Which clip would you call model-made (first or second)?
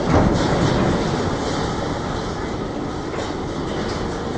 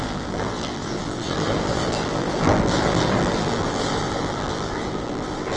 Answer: second